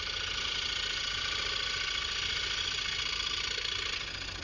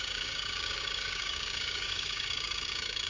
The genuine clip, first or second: first